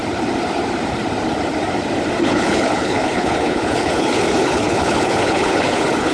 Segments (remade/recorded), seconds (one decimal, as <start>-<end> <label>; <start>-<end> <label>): 0.0-2.2 recorded; 2.2-6.1 remade